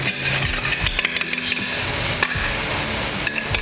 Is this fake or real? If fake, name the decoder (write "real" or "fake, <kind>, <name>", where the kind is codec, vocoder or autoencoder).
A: real